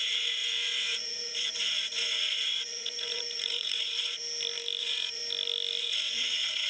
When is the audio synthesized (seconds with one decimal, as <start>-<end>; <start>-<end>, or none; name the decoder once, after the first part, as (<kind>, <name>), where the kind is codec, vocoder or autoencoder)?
0.0-4.2 (vocoder, Vocos); 4.8-5.2; 5.8-6.7

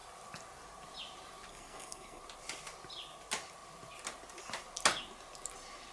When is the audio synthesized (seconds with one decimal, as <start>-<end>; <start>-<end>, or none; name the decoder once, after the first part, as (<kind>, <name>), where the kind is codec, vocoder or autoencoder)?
1.5-2.2 (codec, SNAC)

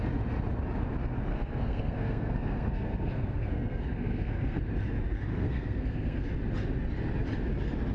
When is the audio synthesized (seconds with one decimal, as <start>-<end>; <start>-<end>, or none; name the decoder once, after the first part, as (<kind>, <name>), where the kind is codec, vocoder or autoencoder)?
1.3-4.6 (codec, SNAC); 5.3-6.3

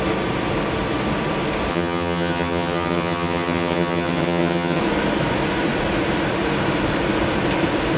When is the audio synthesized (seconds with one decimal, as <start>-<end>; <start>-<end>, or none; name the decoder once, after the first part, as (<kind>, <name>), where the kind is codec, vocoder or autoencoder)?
1.7-4.8 (vocoder, HiFi-GAN)

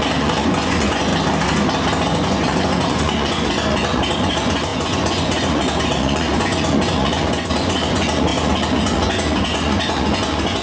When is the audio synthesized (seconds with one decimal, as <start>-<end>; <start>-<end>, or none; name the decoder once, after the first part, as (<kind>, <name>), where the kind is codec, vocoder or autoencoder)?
0.0-1.1 (vocoder, Vocos); 2.0-10.6

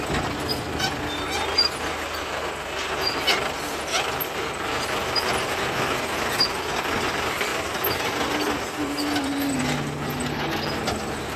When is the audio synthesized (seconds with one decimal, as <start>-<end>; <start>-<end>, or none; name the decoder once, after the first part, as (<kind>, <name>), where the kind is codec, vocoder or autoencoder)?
none

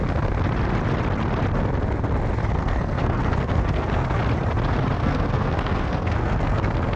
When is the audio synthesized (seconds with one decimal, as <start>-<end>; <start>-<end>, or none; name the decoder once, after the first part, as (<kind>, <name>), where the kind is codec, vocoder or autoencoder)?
2.4-4.2 (codec, SNAC); 5.0-7.0

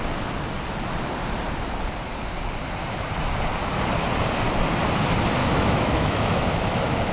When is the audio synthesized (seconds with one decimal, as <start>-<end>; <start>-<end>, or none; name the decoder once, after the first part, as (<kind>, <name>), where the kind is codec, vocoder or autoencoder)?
5.4-7.1 (autoencoder, DAC-VAE)